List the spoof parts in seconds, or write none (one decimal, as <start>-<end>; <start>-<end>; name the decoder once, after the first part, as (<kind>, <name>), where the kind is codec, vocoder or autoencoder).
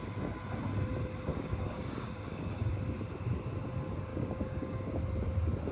1.3-2.7 (codec, DAC); 4.1-5.0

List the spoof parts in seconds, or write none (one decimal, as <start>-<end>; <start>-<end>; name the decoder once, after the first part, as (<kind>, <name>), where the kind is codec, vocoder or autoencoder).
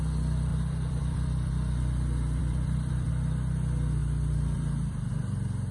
0.5-1.5 (vocoder, BigVGAN v2); 2.4-3.1; 4.0-5.1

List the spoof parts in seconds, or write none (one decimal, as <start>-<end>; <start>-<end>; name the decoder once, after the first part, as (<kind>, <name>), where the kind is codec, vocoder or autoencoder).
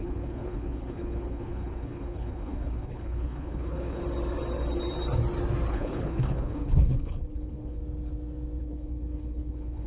0.0-4.0 (codec, HILCodec); 5.7-7.8; 8.6-9.9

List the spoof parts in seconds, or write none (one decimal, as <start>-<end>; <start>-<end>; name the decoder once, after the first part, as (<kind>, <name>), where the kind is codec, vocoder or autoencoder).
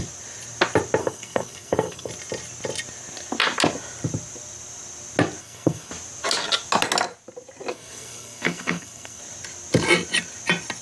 1.0-2.1 (codec, SNAC); 5.4-5.9; 7.7-9.2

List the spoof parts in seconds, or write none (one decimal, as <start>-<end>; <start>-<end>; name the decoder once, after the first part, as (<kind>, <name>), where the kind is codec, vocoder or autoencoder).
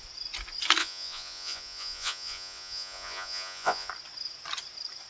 0.8-3.9 (vocoder, Vocos)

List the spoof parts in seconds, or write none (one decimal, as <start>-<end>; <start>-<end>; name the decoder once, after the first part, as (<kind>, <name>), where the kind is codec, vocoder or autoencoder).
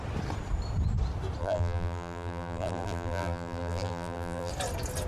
1.4-4.5 (vocoder, BigVGAN v2)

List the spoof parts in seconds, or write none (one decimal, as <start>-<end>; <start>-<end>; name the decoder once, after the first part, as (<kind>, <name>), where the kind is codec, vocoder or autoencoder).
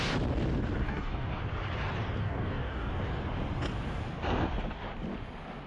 0.8-1.4 (codec, DAC); 2.2-2.9